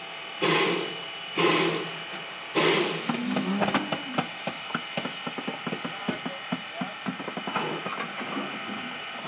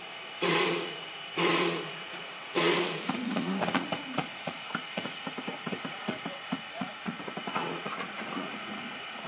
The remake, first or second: second